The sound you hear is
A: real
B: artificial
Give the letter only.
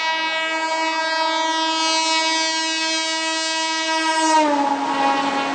A